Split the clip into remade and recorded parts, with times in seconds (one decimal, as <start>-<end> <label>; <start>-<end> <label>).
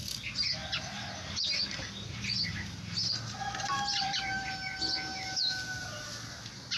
0.0-3.0 recorded; 3.0-4.5 remade; 4.5-6.8 recorded